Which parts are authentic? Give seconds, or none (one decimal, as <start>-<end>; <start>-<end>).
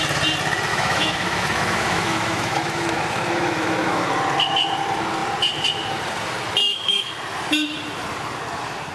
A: 0.0-0.7; 4.1-6.6; 7.1-8.9